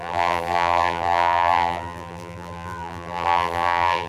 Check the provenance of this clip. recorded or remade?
remade